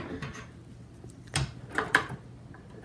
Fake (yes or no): no